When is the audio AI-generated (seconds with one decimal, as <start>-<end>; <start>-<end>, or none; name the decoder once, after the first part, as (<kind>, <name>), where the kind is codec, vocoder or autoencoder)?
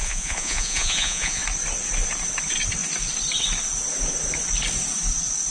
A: 0.0-1.4 (vocoder, Vocos)